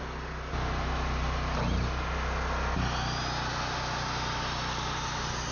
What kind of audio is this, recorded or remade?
recorded